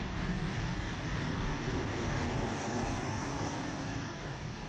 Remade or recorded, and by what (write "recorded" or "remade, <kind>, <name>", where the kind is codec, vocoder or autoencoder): remade, codec, DAC